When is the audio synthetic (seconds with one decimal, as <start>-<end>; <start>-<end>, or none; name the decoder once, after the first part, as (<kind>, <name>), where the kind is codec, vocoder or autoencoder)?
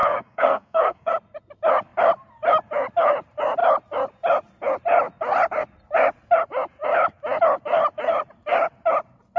0.0-1.1 (codec, SNAC)